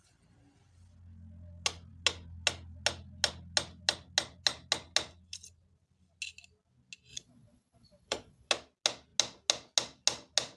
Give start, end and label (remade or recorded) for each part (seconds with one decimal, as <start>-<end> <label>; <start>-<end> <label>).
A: 0.0-7.1 recorded; 7.1-8.5 remade; 8.5-10.6 recorded